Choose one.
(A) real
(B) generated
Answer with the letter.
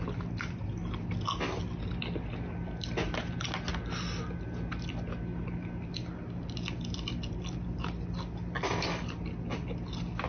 A